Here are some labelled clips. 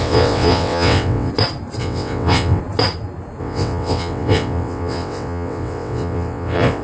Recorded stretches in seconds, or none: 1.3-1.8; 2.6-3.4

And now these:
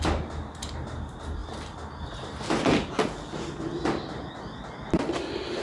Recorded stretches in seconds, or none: 0.0-5.6

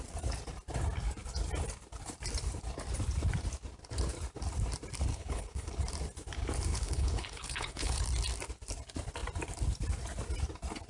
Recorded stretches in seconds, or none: 0.0-5.1; 5.7-6.7; 8.0-10.9

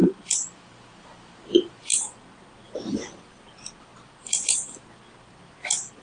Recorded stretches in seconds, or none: 0.6-6.0

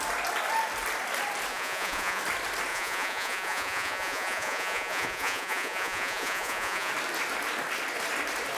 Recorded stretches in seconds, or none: 0.0-1.5; 2.2-2.7; 6.9-8.6

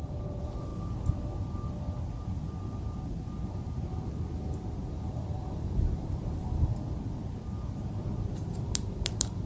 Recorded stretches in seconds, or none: 0.7-4.9; 6.7-8.6

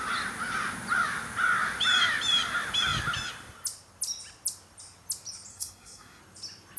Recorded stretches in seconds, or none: 0.0-5.5; 6.2-6.8